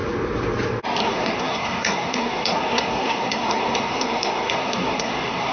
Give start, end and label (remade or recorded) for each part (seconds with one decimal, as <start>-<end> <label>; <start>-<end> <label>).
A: 0.0-1.0 recorded; 1.0-5.5 remade